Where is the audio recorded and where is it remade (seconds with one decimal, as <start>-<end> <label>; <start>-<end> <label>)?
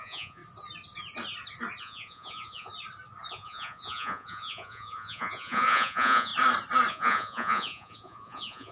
0.0-0.4 remade; 0.4-1.8 recorded; 1.8-2.7 remade; 2.7-3.3 recorded; 3.3-6.3 remade; 6.3-6.9 recorded; 6.9-8.7 remade